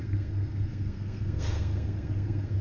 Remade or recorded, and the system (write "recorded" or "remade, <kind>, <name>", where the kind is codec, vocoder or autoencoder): remade, codec, SNAC